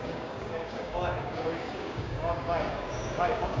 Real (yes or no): no